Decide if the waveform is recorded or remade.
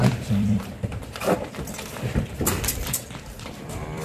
remade